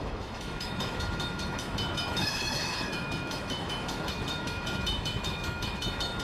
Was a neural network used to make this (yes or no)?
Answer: yes